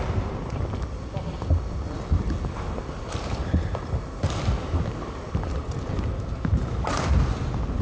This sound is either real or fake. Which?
real